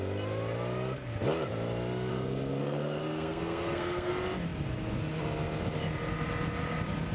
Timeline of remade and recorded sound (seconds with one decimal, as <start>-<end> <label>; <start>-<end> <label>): 0.0-2.1 recorded; 2.1-4.1 remade; 4.1-7.1 recorded